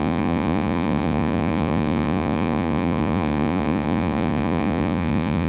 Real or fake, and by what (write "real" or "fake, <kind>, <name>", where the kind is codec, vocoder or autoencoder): fake, vocoder, Vocos